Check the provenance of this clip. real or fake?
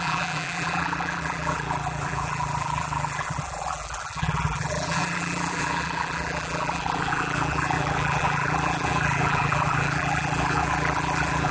fake